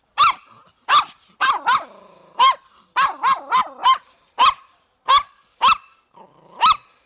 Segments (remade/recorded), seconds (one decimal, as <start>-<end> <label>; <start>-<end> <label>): 0.0-3.8 recorded; 3.8-5.1 remade; 5.1-7.1 recorded